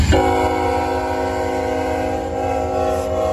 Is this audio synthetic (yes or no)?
no